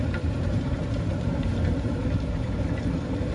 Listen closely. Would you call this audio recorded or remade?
remade